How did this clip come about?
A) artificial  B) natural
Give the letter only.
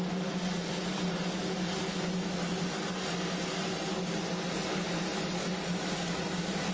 B